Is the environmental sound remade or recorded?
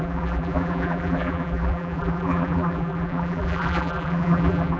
remade